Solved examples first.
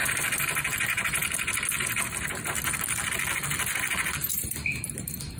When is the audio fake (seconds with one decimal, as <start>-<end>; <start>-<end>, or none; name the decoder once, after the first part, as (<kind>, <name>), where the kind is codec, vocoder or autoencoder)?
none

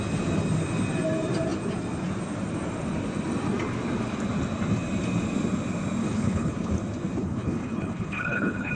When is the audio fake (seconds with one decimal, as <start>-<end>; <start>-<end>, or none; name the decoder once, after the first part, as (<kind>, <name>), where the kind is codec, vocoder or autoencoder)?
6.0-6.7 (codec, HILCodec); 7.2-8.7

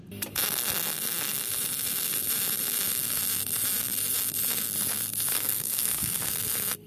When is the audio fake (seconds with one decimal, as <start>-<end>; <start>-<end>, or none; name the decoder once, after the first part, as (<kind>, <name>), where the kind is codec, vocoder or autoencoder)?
5.3-6.3 (codec, SNAC)

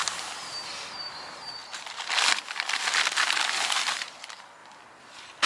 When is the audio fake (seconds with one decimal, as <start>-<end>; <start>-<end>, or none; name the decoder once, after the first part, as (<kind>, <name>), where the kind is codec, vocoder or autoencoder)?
1.0-1.6 (vocoder, BigVGAN v2); 2.3-4.6

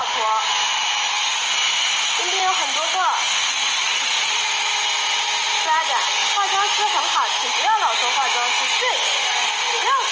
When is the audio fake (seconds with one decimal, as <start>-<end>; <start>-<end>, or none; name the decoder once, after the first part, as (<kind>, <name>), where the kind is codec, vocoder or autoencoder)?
3.6-4.4 (vocoder, Vocos)

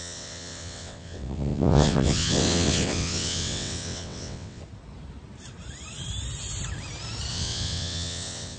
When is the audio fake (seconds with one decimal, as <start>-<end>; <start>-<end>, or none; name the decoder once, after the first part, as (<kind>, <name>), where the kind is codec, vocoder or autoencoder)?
0.0-4.6 (vocoder, WaveNeXt); 7.3-8.6